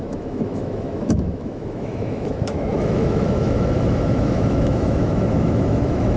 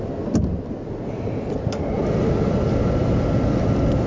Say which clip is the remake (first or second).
first